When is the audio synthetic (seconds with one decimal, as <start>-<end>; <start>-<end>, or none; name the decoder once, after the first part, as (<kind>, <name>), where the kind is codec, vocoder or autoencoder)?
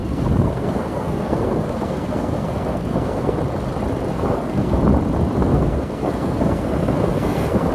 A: 0.0-3.4 (codec, SNAC); 4.1-4.8; 5.4-7.7